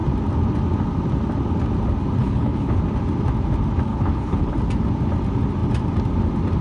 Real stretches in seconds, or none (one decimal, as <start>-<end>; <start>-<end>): 0.0-2.2; 2.8-3.9; 4.5-6.6